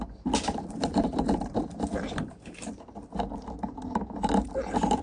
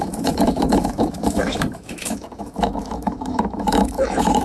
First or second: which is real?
first